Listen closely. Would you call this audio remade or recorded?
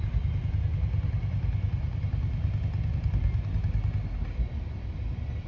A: recorded